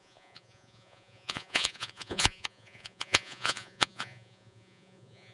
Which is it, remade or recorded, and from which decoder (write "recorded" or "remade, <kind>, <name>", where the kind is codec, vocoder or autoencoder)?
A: remade, vocoder, Vocos